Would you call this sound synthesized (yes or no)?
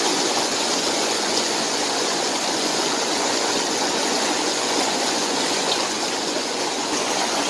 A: yes